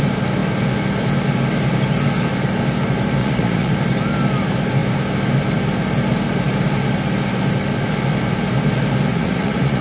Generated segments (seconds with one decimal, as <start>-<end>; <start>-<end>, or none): 3.2-3.7; 9.1-9.8